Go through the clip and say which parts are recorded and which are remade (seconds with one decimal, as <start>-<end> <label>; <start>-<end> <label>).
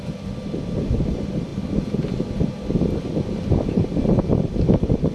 0.0-5.1 recorded